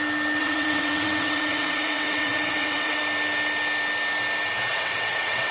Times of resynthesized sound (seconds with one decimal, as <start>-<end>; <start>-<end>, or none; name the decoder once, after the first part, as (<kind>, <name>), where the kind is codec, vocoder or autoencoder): 0.4-3.0 (vocoder, WaveNeXt); 4.7-5.5